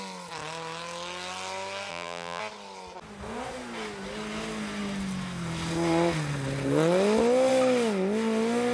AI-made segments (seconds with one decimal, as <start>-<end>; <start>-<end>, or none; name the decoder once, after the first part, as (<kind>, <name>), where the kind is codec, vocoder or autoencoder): 1.9-2.4 (vocoder, BigVGAN v2)